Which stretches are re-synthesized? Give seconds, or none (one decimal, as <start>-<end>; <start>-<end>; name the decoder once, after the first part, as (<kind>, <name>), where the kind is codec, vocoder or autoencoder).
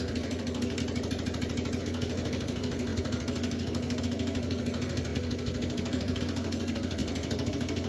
0.0-0.8 (codec, SNAC); 1.8-7.9